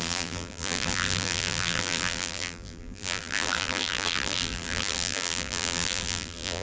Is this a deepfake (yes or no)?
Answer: yes